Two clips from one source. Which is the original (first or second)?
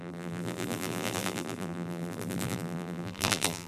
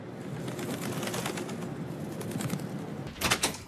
second